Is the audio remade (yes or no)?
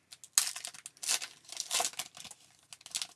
no